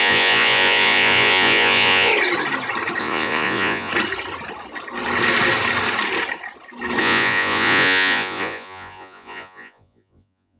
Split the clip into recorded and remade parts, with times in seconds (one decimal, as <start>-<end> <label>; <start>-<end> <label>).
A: 0.0-2.1 remade; 2.1-3.0 recorded; 3.0-3.9 remade; 3.9-7.0 recorded; 7.0-10.6 remade